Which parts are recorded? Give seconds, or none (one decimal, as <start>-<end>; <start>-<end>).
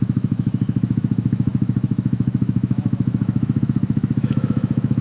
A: none